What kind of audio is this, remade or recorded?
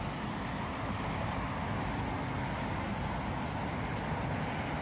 recorded